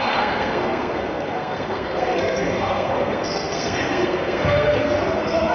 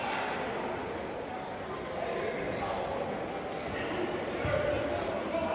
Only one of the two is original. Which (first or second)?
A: second